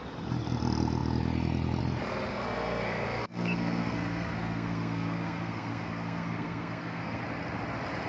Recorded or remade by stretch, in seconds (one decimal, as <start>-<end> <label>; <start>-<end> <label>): 0.0-2.3 recorded; 2.3-7.2 remade; 7.2-8.1 recorded